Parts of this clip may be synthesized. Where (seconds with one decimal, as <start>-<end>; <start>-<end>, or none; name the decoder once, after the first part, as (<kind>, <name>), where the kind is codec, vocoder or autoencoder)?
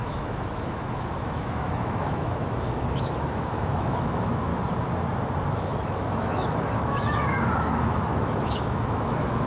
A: 0.0-4.5 (autoencoder, DAC-VAE); 5.5-9.5